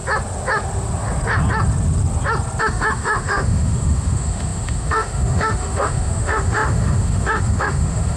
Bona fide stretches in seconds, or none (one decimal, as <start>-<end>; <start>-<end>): 0.0-2.6